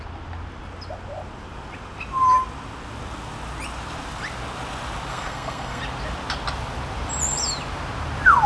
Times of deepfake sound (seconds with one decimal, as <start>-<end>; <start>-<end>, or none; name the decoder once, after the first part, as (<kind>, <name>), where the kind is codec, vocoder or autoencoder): 5.1-5.8 (codec, SNAC)